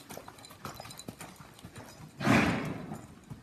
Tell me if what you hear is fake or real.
real